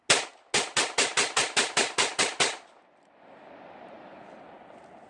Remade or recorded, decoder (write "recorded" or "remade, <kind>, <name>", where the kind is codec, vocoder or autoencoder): recorded